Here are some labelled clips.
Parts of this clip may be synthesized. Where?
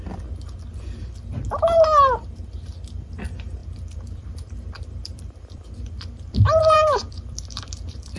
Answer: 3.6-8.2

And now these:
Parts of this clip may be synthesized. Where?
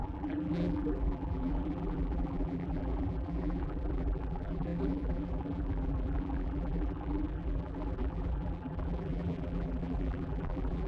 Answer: 0.0-10.9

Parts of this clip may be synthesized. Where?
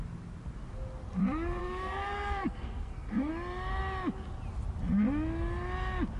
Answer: 1.6-3.3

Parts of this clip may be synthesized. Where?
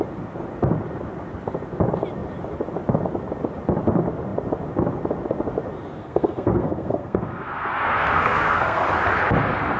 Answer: 6.0-8.8